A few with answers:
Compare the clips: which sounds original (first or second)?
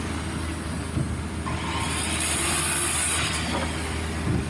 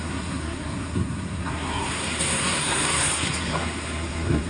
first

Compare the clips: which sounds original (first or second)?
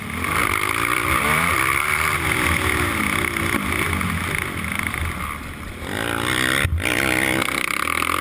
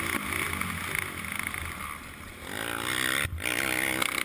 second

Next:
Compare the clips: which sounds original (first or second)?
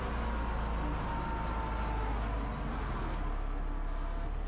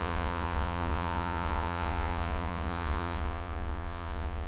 first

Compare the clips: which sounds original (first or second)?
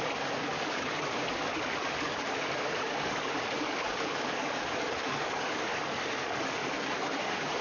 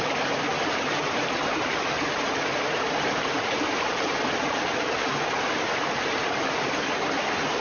second